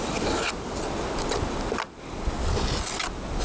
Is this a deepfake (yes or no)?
no